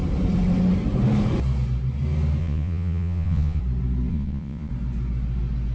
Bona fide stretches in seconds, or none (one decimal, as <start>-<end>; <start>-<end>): 0.0-2.4; 3.6-4.1; 4.7-5.7